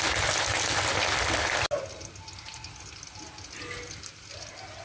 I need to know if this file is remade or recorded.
recorded